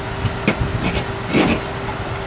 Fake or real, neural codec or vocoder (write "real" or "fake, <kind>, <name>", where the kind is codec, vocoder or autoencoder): real